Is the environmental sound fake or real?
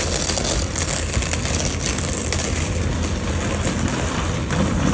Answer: real